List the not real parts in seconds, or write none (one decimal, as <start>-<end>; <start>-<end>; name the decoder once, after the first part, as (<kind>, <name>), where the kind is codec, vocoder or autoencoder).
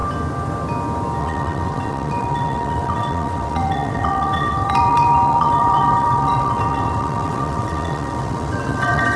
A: 1.2-9.2 (vocoder, WaveNeXt)